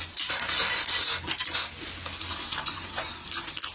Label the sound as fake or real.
real